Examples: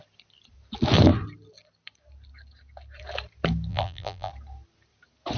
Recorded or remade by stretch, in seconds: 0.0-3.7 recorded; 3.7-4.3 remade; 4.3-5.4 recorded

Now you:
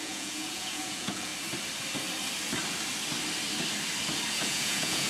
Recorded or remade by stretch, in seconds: 0.0-1.3 remade; 1.3-4.3 recorded; 4.3-5.1 remade

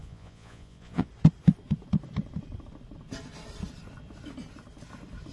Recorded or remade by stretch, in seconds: 0.0-1.1 remade; 1.1-5.3 recorded

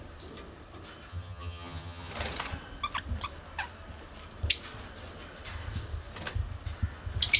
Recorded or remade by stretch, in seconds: 0.0-1.1 recorded; 1.1-2.1 remade; 2.1-7.4 recorded

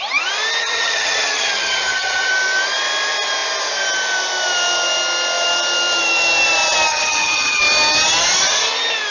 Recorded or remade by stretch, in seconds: 0.0-0.6 recorded; 0.6-2.3 remade; 2.3-6.9 recorded; 6.9-7.6 remade; 7.6-9.1 recorded

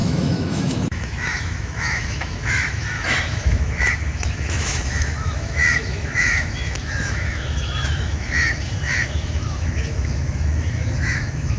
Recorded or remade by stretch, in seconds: 0.0-11.6 remade